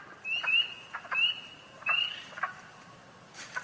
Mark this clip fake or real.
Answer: fake